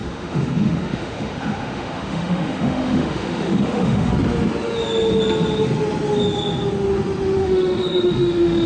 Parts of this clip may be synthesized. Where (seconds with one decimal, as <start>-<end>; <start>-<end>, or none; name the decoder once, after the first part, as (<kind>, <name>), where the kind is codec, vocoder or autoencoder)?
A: 0.0-4.1 (autoencoder, DAC-VAE); 7.4-8.7